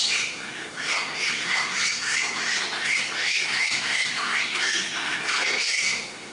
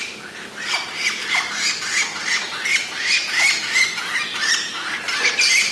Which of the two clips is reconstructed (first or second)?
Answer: first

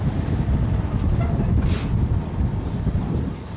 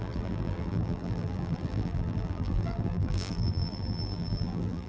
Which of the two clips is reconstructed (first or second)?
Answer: second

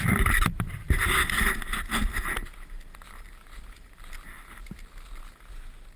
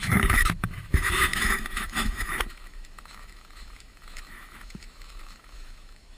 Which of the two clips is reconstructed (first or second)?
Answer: second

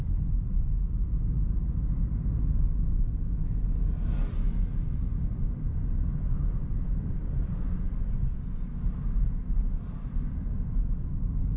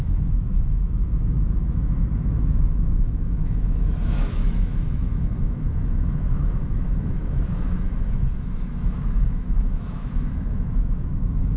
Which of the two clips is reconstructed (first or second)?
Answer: second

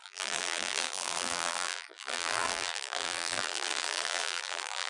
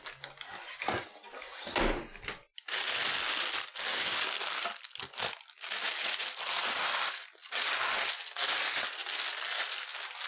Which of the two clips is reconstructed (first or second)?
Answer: first